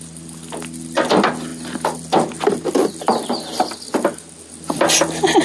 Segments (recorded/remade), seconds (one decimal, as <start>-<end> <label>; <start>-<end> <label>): 0.0-5.4 recorded